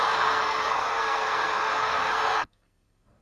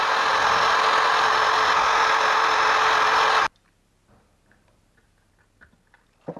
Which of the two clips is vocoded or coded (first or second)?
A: first